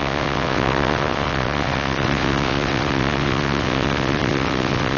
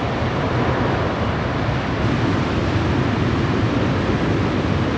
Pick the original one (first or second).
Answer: second